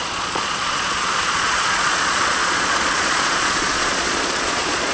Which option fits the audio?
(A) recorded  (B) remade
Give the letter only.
B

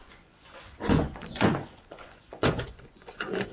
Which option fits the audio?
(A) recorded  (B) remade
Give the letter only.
B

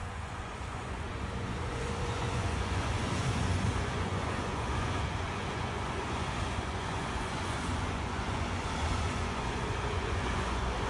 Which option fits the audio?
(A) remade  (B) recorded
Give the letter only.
A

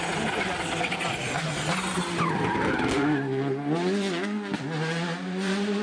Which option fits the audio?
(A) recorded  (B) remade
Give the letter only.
A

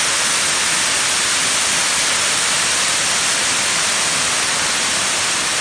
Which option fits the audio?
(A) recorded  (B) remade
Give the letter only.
A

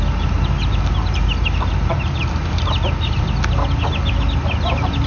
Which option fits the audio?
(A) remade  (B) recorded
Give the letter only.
B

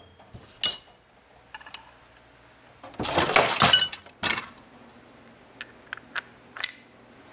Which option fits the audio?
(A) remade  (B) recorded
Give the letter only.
B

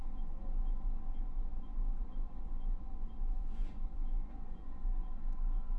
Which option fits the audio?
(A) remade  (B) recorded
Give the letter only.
A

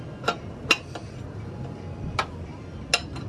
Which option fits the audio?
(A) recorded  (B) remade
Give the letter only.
A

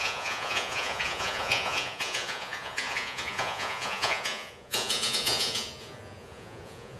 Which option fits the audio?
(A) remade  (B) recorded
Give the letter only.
A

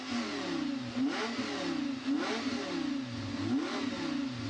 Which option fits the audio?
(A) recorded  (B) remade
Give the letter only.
A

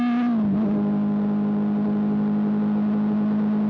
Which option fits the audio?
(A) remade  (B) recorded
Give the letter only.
B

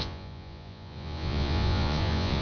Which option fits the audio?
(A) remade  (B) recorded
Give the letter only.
A